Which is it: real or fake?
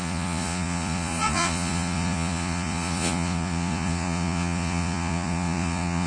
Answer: fake